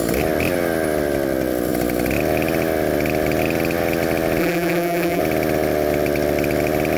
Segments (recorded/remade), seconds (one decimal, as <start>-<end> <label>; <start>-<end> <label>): 0.0-4.4 recorded; 4.4-5.2 remade; 5.2-7.0 recorded